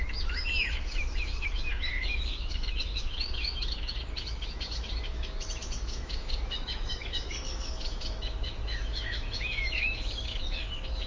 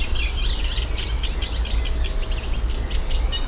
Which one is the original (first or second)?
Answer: second